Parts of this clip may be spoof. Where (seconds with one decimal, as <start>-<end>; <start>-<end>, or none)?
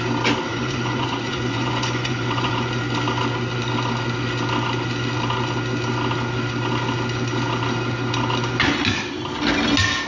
0.5-2.7